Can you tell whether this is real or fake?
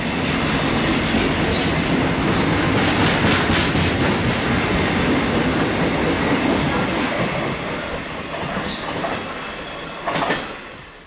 real